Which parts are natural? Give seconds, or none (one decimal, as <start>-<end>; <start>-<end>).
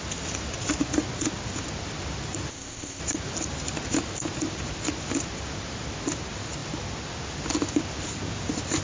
0.0-2.5; 3.0-8.8